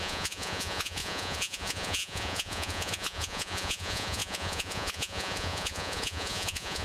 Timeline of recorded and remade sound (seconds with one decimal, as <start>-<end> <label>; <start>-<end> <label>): 0.0-6.8 remade